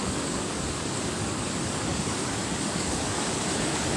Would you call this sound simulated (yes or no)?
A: yes